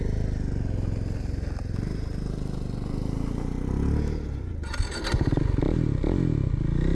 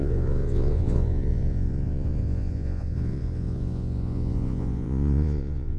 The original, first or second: first